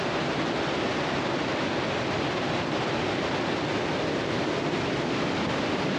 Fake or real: real